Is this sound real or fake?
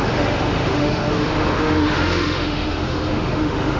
fake